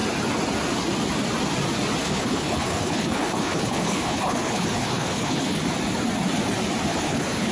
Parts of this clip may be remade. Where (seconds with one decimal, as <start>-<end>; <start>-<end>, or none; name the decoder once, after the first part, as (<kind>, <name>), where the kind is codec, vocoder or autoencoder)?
2.0-5.6 (codec, HILCodec); 6.9-7.5